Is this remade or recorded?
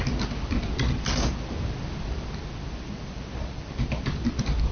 recorded